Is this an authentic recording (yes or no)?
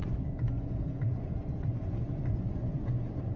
no